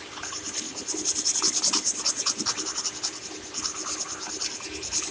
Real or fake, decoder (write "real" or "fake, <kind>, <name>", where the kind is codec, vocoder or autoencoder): real